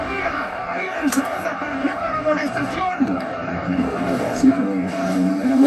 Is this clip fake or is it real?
fake